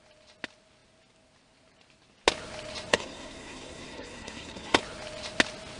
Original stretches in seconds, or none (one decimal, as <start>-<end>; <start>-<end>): 0.0-2.9; 4.8-5.8